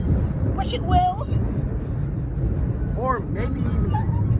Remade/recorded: recorded